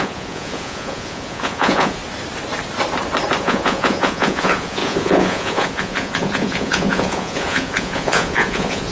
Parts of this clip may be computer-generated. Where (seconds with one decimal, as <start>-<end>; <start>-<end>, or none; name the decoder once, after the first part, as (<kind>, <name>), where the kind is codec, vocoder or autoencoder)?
0.0-2.0 (vocoder, Vocos); 3.4-8.9